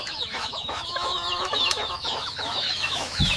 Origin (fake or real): fake